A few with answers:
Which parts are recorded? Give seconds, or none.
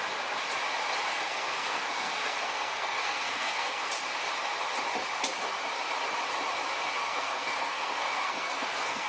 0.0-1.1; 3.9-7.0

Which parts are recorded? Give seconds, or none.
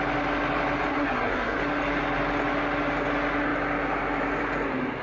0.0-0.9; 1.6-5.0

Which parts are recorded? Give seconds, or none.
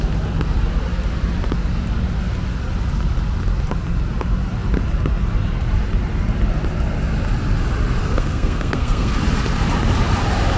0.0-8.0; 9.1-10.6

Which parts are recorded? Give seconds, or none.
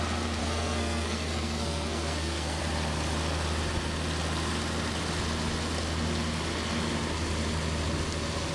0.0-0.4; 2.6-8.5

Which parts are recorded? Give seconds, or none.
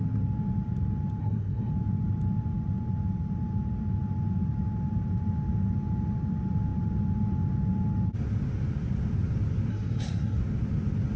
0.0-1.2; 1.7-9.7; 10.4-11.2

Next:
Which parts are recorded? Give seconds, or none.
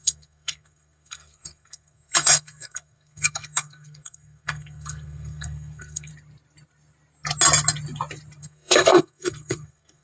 6.1-8.4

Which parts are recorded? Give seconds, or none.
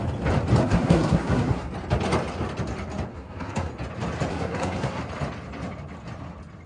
0.0-0.6; 1.7-3.1; 3.7-4.3; 5.0-6.7